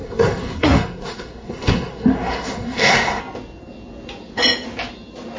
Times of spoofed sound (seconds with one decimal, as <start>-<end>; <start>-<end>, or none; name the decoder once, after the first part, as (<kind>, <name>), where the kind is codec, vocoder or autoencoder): 0.0-3.2 (codec, SNAC)